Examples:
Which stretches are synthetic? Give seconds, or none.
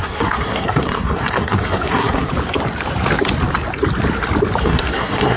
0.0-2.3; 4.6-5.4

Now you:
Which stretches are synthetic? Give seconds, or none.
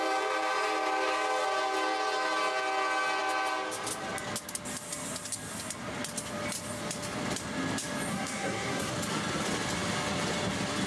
8.1-8.9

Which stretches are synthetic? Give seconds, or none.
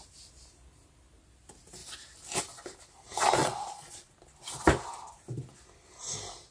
3.4-4.1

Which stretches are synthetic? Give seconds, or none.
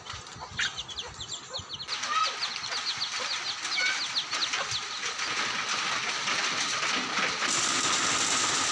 0.7-1.6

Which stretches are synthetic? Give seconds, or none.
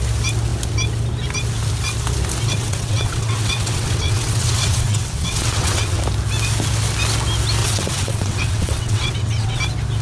2.6-6.0; 7.6-9.6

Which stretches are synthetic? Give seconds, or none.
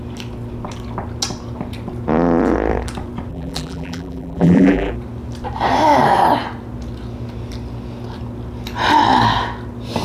3.3-4.9